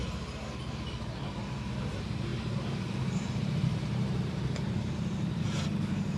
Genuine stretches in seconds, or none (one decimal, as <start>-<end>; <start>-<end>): 0.0-1.8